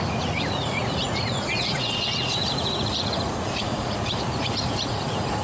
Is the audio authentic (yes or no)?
no